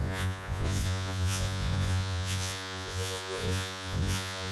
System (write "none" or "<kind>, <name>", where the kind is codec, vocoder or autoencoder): vocoder, Vocos